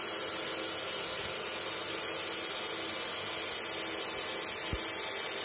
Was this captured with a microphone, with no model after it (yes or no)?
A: yes